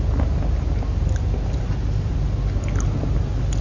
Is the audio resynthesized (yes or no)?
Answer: no